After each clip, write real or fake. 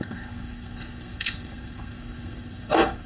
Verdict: fake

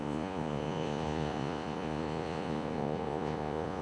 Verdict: fake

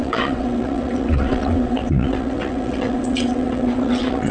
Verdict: fake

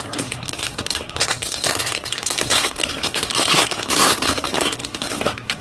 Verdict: fake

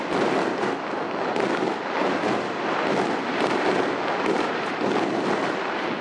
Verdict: real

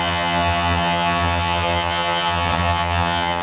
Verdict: fake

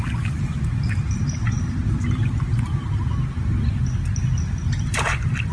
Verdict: real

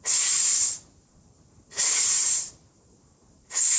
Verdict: fake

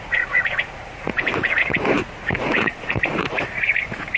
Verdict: fake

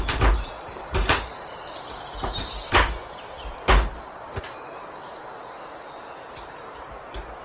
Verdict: fake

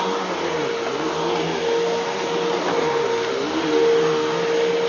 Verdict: real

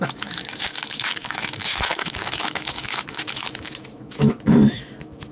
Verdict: fake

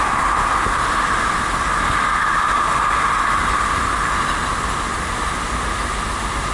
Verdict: real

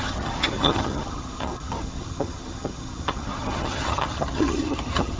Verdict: fake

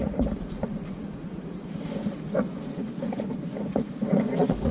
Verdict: fake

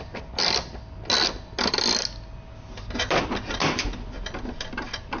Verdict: real